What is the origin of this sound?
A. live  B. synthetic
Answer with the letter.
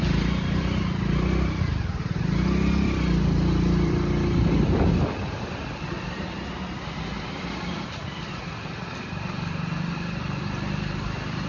B